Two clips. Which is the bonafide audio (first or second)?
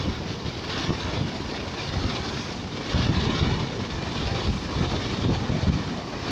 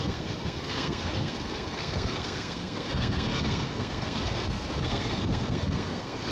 first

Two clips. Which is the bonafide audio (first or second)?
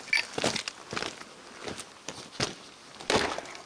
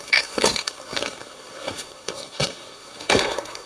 first